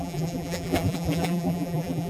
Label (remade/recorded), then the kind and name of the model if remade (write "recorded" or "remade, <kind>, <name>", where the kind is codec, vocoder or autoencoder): remade, vocoder, BigVGAN v2